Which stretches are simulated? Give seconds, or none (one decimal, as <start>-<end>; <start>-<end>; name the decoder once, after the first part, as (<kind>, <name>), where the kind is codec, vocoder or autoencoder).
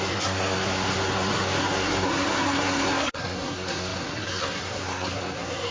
0.0-5.7 (codec, SNAC)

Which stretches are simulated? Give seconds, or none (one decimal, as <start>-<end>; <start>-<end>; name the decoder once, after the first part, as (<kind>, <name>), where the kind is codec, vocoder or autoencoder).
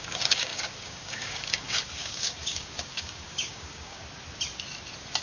0.0-4.0 (codec, DAC)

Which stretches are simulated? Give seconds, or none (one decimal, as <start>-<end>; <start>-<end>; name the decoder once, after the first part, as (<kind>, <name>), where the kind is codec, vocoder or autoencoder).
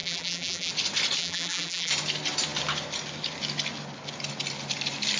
0.0-0.7 (vocoder, BigVGAN v2); 1.2-1.9